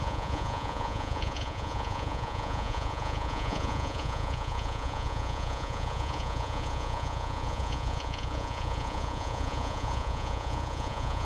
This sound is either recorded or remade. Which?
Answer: remade